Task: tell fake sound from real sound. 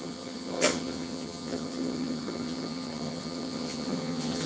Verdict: fake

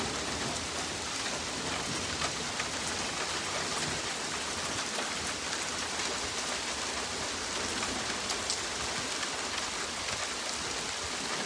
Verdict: real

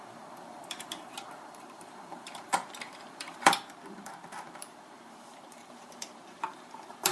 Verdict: fake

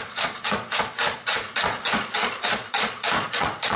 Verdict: fake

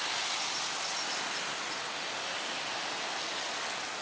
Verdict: real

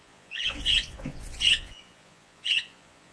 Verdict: fake